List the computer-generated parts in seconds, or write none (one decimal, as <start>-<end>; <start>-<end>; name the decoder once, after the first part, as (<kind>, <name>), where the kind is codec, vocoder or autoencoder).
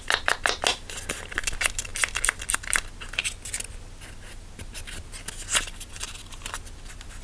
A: none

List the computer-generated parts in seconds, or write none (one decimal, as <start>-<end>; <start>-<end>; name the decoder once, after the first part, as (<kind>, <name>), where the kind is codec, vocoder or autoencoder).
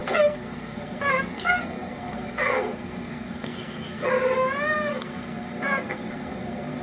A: 0.0-4.1 (codec, SNAC); 4.9-6.8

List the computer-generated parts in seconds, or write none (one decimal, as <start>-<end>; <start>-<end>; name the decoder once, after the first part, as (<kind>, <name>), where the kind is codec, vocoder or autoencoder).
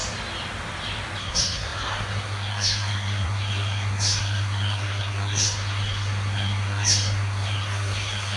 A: 1.2-8.4 (codec, SNAC)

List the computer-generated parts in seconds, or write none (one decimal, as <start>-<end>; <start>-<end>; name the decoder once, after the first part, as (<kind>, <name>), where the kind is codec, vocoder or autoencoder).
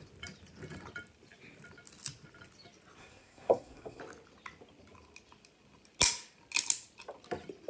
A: 3.0-4.0 (codec, SNAC)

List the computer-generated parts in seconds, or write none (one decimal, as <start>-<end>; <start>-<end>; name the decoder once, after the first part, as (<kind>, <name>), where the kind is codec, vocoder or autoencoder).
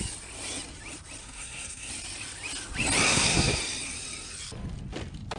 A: 1.2-1.9 (codec, SNAC); 3.1-3.6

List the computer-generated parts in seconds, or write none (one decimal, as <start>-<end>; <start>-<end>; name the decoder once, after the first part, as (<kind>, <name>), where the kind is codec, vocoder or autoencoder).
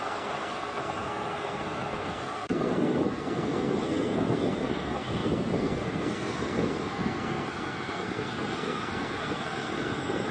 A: 0.0-10.3 (codec, SNAC)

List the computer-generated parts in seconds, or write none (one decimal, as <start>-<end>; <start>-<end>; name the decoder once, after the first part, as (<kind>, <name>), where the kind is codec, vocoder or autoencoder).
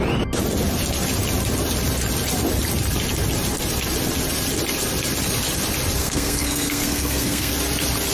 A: 6.0-7.5 (codec, SNAC)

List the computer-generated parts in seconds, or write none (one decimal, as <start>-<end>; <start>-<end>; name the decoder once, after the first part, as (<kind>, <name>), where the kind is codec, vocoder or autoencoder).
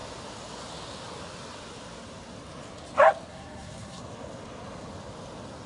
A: 3.3-4.0 (codec, SNAC)